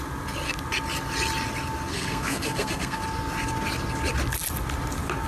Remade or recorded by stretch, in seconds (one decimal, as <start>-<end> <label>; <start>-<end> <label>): 0.0-1.9 recorded; 1.9-3.0 remade; 3.0-5.3 recorded

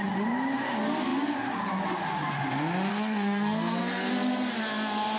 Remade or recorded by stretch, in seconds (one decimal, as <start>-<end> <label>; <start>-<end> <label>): 0.0-2.9 recorded; 2.9-4.1 remade; 4.1-5.2 recorded

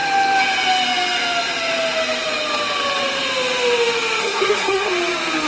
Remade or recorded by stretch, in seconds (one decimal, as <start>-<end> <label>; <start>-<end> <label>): 0.0-4.2 recorded; 4.2-4.9 remade; 4.9-5.5 recorded

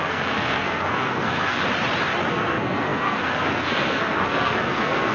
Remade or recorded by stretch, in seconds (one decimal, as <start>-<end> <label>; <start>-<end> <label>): 0.0-1.6 remade; 1.6-2.3 recorded; 2.3-5.1 remade

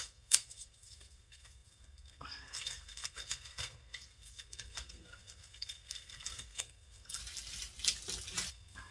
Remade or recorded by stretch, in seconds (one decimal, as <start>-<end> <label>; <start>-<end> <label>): 0.0-7.2 remade; 7.2-8.5 recorded; 8.5-8.9 remade